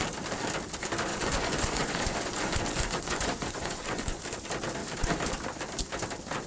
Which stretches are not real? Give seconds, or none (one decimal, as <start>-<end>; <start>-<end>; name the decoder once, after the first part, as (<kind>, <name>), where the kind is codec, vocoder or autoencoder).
1.1-4.2 (vocoder, Vocos)